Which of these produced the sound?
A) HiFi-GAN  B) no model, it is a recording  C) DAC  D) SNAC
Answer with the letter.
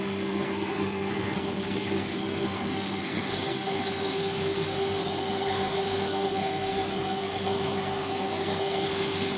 D